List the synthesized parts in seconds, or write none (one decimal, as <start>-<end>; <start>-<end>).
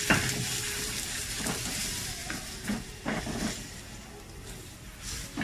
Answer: 0.6-1.4; 2.2-3.2